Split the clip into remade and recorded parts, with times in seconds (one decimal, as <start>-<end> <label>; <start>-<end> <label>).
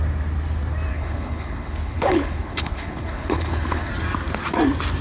0.0-0.9 recorded; 0.9-3.9 remade; 3.9-5.0 recorded